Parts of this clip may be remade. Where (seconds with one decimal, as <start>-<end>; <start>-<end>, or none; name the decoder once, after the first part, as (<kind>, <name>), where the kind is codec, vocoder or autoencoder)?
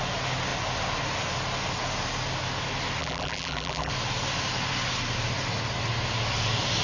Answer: 3.0-3.9 (vocoder, BigVGAN v2)